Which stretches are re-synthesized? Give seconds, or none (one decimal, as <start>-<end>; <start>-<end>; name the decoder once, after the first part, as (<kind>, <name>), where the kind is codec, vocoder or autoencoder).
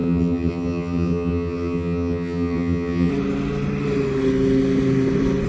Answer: 0.0-3.1 (vocoder, HiFi-GAN)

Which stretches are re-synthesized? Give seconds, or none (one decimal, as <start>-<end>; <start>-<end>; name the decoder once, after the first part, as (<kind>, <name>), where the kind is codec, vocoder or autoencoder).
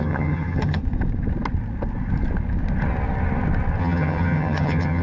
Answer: 0.0-0.8 (vocoder, HiFi-GAN); 3.8-5.0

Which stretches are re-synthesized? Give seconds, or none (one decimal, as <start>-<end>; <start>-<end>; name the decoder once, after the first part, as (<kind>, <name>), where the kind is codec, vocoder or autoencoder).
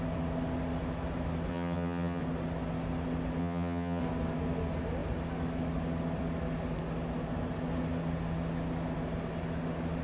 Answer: 1.5-2.2 (vocoder, HiFi-GAN); 3.4-4.0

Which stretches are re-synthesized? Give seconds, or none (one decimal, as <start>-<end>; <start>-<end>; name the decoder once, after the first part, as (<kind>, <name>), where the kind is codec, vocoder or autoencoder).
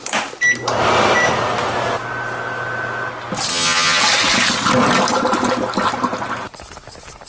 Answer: 3.5-4.0 (vocoder, HiFi-GAN)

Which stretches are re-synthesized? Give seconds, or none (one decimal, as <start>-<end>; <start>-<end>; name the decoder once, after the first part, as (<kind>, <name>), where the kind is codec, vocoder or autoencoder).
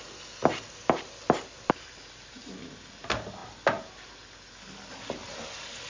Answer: none